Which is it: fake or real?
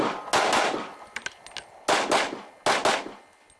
real